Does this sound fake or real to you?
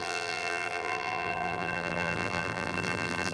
fake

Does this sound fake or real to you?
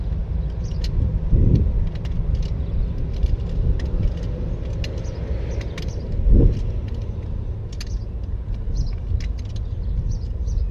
real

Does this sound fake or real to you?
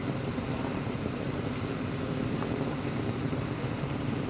fake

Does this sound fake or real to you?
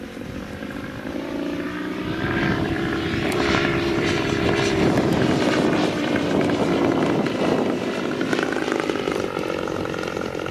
fake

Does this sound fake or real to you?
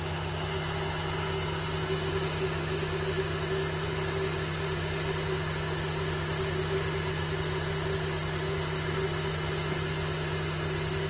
real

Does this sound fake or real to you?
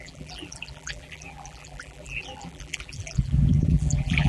fake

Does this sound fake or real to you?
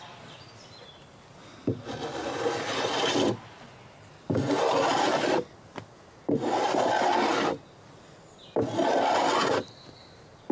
real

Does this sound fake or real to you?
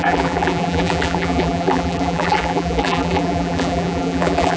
fake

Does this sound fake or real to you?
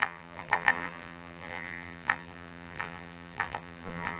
fake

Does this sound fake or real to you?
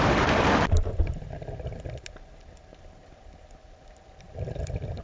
real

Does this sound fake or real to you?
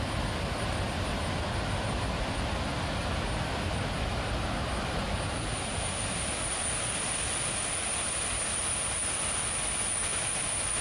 real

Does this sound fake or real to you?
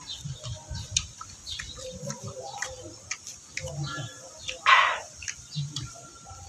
real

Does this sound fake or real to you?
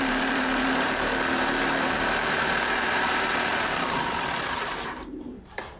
fake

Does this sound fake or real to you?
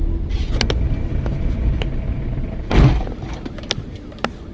real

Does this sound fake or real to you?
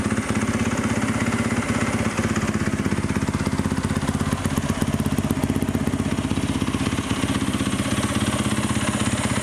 real